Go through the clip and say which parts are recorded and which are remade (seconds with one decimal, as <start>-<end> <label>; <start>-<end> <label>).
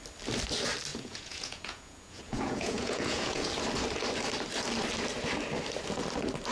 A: 0.0-0.9 recorded; 0.9-3.5 remade; 3.5-6.5 recorded